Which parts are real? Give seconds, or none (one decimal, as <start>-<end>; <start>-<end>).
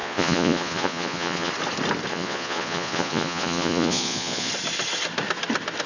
1.5-2.1; 4.5-5.9